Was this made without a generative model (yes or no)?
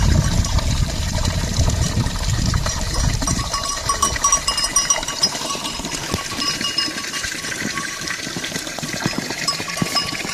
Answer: no